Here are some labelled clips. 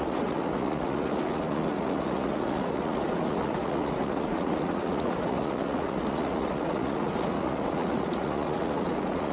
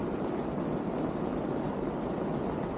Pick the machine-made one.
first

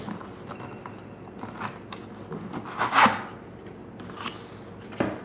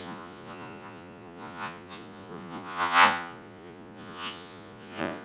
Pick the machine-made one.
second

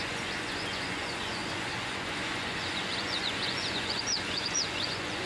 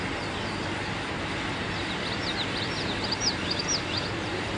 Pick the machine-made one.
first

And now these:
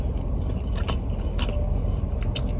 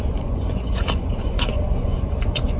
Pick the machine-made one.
second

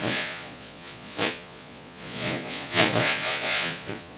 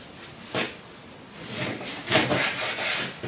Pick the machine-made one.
first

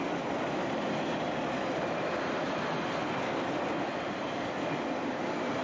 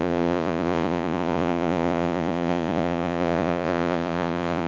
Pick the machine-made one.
second